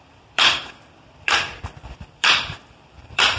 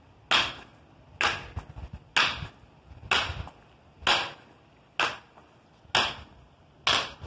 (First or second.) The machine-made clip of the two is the first